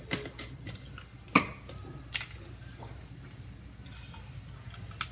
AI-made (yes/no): no